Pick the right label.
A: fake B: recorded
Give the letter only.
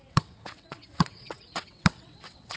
A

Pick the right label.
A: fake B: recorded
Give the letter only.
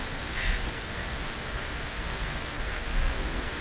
A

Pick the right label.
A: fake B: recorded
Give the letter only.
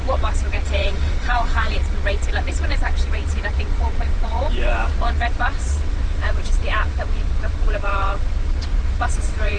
A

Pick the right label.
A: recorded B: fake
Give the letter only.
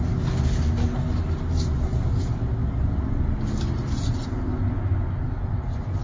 A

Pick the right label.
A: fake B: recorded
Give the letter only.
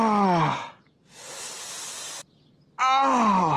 B